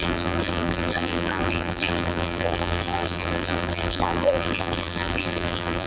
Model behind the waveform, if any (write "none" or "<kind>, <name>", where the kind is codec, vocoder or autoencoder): vocoder, BigVGAN v2